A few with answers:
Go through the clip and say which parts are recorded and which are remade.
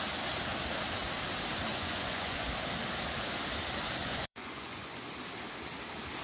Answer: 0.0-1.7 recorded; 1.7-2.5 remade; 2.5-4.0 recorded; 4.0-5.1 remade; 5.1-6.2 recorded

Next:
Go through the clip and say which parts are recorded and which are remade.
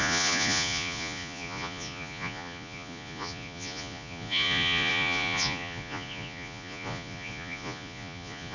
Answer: 0.0-8.5 remade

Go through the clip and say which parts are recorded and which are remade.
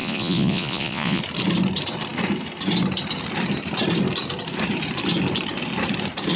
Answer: 0.0-1.2 remade; 1.2-6.4 recorded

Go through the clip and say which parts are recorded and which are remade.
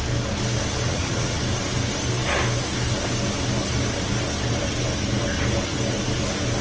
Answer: 0.0-0.9 recorded; 0.9-1.4 remade; 1.4-6.6 recorded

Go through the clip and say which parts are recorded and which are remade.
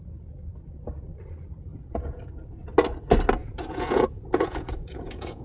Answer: 0.0-1.7 recorded; 1.7-2.3 remade; 2.3-3.4 recorded; 3.4-5.4 remade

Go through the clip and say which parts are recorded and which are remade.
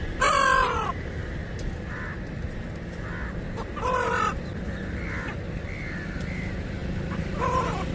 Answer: 0.0-7.9 recorded